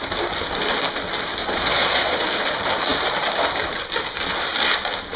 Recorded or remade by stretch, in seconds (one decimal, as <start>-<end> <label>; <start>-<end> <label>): 0.0-1.4 recorded; 1.4-2.2 remade; 2.2-5.2 recorded